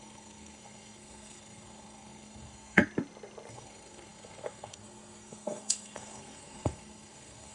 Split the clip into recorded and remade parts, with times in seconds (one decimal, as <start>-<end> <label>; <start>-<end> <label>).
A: 0.0-2.8 remade; 2.8-3.5 recorded; 3.5-7.5 remade